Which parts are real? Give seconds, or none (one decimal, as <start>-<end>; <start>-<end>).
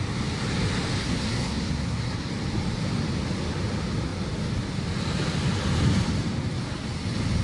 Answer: 0.0-1.0; 2.3-7.4